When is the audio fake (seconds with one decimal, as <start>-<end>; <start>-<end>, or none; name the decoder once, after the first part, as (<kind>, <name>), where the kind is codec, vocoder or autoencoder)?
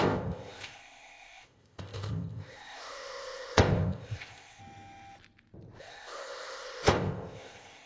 0.0-4.6 (codec, ZipCodec); 5.8-7.9